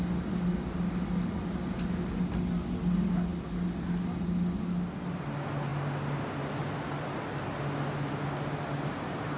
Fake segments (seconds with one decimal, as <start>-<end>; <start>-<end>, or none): none